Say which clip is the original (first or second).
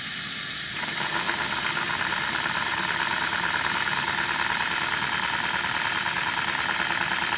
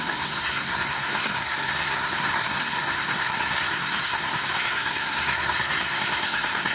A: first